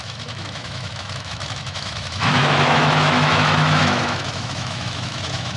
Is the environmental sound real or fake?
fake